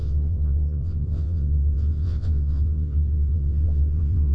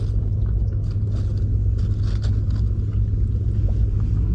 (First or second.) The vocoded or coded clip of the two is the first